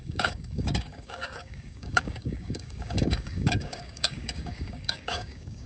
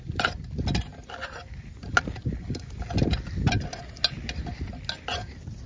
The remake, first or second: first